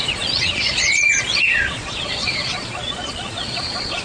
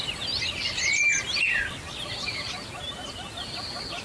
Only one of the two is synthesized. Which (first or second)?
first